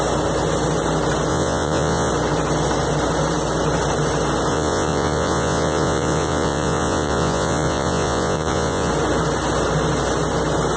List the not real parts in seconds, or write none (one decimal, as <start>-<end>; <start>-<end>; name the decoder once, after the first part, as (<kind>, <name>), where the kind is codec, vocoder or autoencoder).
1.3-2.1 (vocoder, Vocos); 4.5-8.9

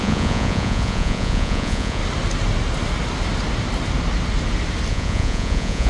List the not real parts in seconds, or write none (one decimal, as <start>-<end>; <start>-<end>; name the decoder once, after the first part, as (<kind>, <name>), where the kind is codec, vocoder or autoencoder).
0.0-2.0 (vocoder, Vocos); 4.9-5.9